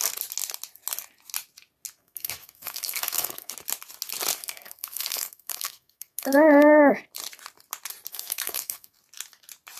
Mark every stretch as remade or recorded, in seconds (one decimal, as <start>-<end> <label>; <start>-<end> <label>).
0.0-2.0 recorded; 2.0-3.5 remade; 3.5-4.4 recorded; 4.4-6.9 remade; 6.9-8.1 recorded; 8.1-9.0 remade; 9.0-9.8 recorded